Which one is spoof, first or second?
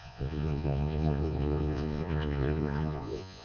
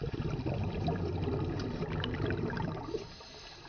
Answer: first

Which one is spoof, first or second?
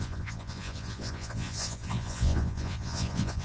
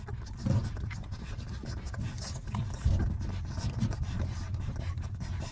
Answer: first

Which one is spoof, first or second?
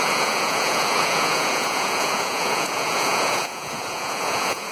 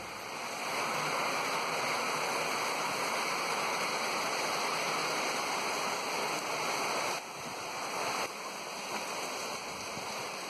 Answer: first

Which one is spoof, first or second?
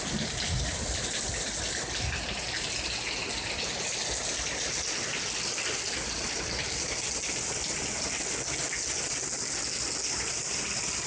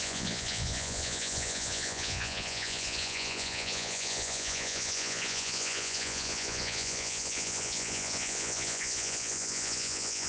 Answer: second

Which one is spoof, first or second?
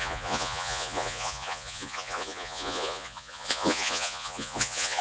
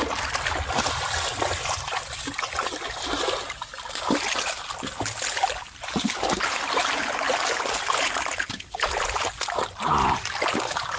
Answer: first